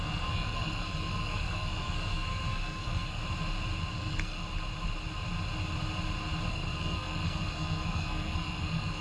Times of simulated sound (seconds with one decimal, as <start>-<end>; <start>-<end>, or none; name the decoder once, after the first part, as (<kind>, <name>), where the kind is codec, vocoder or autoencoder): 0.0-3.2 (codec, SNAC); 3.9-4.4; 6.5-9.0